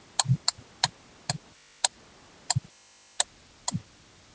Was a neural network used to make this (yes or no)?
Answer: no